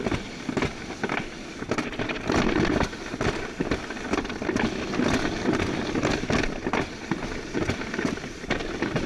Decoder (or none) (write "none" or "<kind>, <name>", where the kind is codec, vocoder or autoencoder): none